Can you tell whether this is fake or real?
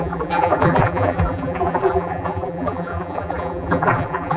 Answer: fake